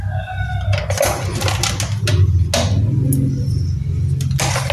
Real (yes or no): yes